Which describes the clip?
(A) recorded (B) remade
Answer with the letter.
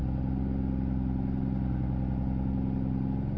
A